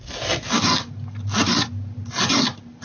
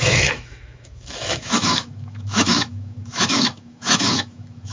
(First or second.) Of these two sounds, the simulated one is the second